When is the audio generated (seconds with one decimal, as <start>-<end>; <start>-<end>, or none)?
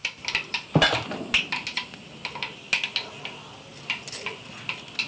none